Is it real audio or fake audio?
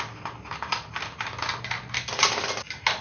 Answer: real